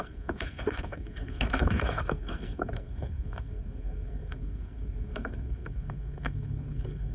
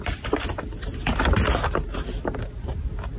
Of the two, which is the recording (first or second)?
second